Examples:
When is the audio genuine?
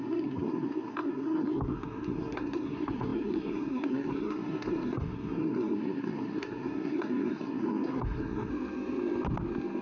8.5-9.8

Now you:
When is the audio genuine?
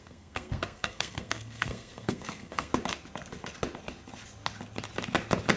2.7-5.6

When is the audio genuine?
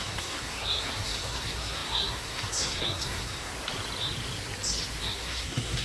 3.5-5.0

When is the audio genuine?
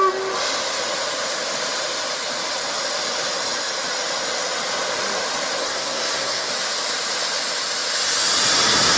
0.0-5.6; 6.5-9.0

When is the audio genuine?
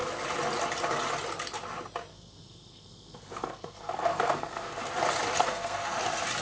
0.0-2.1; 4.8-5.4; 6.0-6.4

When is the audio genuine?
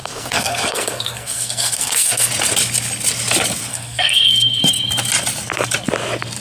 2.3-3.7; 4.6-6.4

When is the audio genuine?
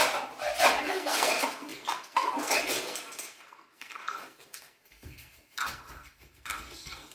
0.0-0.8